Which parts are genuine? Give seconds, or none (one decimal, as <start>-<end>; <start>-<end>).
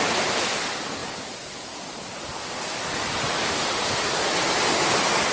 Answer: 0.0-5.3